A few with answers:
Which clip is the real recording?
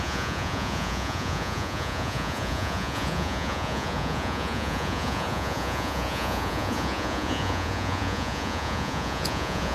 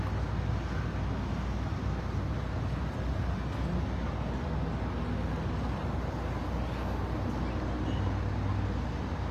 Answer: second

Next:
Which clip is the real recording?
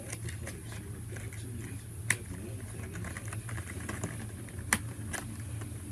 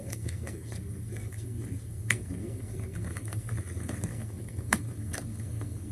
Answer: first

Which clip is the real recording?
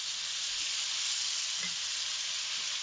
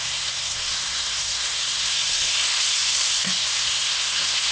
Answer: first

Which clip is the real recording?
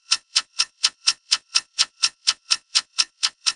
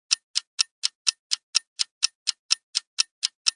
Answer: second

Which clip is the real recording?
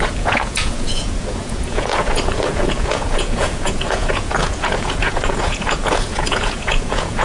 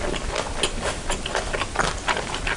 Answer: second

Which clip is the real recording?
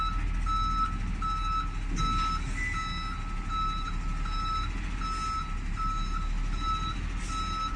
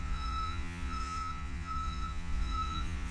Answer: first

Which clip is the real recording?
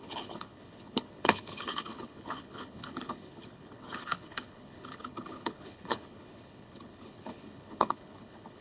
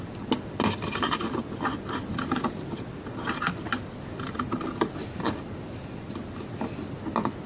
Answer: second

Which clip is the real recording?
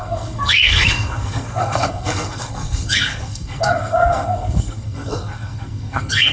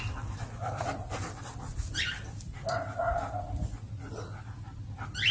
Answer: second